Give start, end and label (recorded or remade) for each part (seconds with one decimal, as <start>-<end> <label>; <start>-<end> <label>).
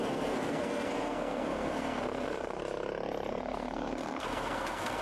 0.0-2.6 remade; 2.6-3.3 recorded; 3.3-5.0 remade